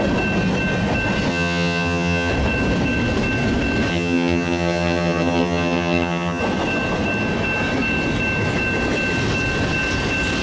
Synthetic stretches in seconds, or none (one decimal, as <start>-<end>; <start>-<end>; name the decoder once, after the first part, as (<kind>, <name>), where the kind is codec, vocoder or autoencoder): 1.3-2.3 (vocoder, HiFi-GAN); 3.9-6.4